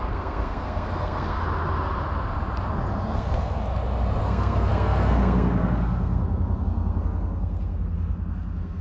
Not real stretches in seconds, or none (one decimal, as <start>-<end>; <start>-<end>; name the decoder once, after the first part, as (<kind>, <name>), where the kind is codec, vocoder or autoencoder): 0.0-1.4 (codec, SNAC); 3.0-3.6; 4.2-8.8